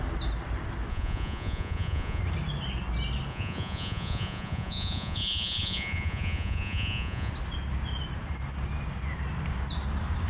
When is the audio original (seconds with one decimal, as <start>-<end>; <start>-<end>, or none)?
0.0-0.9; 2.2-3.3; 7.3-10.3